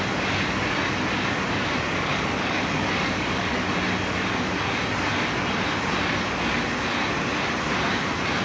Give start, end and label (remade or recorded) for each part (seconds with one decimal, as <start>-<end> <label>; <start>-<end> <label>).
0.0-1.9 recorded; 1.9-3.7 remade; 3.7-8.4 recorded